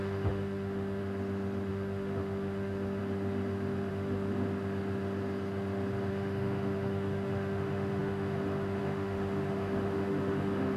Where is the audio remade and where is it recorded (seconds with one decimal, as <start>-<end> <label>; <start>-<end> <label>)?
0.0-1.0 remade; 1.0-1.7 recorded; 1.7-3.0 remade; 3.0-3.9 recorded; 3.9-4.3 remade; 4.3-6.1 recorded; 6.1-10.8 remade